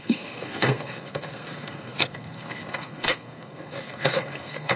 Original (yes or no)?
no